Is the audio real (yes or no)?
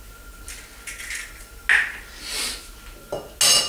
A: yes